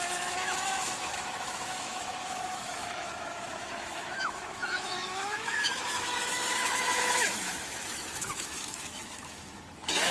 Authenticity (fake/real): fake